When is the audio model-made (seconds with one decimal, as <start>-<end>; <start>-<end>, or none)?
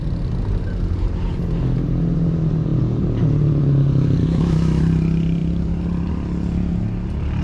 4.2-4.8